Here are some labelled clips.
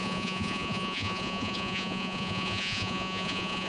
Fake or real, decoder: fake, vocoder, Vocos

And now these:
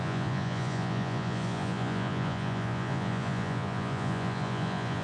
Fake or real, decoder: fake, vocoder, Vocos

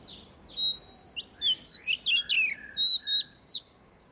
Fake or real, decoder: real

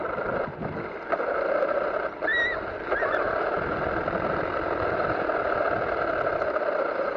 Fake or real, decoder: real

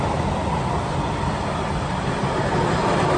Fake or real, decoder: real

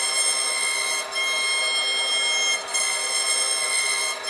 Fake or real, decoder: real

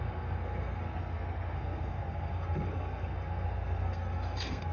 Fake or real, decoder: fake, codec, SNAC